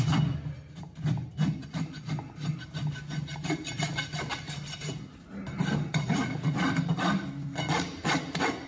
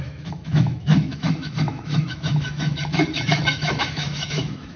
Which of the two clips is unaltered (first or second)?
first